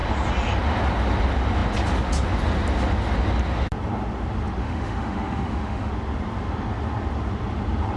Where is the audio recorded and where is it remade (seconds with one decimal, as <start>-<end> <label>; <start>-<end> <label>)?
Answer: 0.0-4.6 recorded; 4.6-5.9 remade; 5.9-8.0 recorded

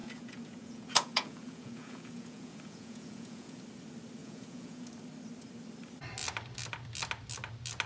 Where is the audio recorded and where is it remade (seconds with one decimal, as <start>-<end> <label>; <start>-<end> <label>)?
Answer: 0.0-3.6 remade; 3.6-4.2 recorded; 4.2-4.9 remade; 4.9-7.9 recorded

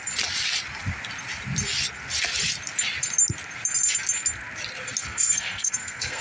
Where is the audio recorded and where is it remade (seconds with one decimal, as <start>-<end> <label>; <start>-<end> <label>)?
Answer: 0.0-5.0 recorded; 5.0-6.2 remade

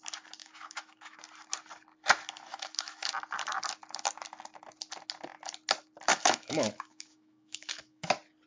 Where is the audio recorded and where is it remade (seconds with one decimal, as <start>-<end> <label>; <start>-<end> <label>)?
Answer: 0.0-0.4 recorded; 0.4-1.2 remade; 1.2-2.5 recorded; 2.5-3.1 remade; 3.1-6.1 recorded; 6.1-8.1 remade; 8.1-8.5 recorded

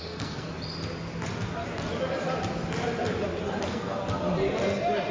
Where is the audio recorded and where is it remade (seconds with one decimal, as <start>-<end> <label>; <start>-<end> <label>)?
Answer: 0.0-0.5 remade; 0.5-3.6 recorded; 3.6-4.0 remade; 4.0-5.1 recorded

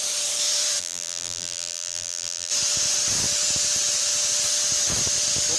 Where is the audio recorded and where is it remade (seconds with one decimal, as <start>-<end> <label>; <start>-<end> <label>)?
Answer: 0.0-0.8 recorded; 0.8-2.5 remade; 2.5-5.6 recorded

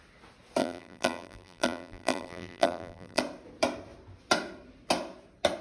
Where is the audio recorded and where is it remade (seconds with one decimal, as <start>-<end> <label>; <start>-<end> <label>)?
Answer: 0.0-0.6 recorded; 0.6-3.2 remade; 3.2-5.6 recorded

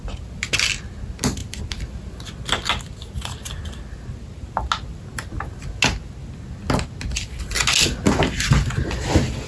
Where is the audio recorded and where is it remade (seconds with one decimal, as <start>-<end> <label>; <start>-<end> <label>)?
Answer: 0.0-9.5 recorded